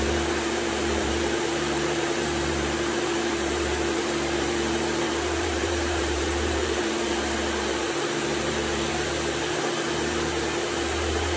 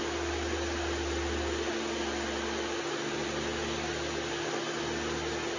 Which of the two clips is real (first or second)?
second